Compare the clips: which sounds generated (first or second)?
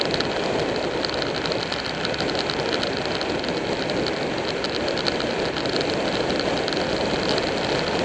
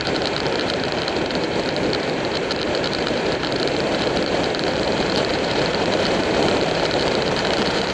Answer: second